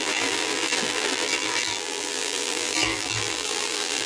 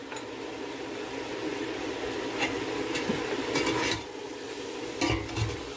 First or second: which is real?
second